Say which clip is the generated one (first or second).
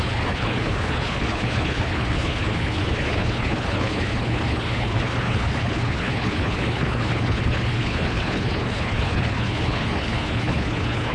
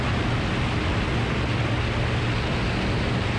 first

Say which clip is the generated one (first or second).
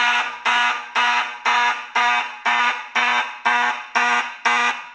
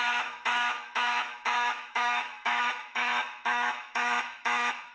second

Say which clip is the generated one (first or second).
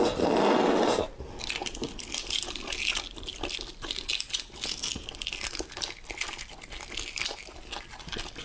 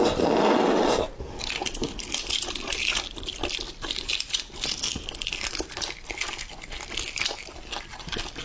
second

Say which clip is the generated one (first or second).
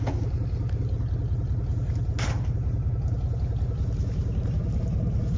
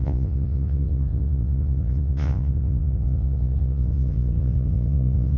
second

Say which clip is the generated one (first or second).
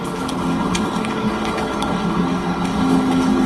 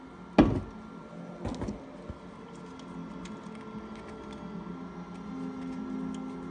first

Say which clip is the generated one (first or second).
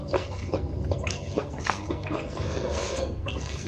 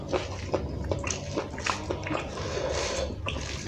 first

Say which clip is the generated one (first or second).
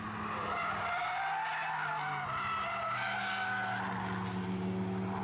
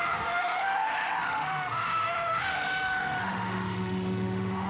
second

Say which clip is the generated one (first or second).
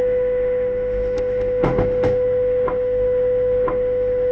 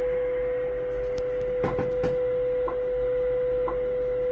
first